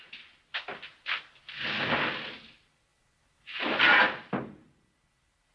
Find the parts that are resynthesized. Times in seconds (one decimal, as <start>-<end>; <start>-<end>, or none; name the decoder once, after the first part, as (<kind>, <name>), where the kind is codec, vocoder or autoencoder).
none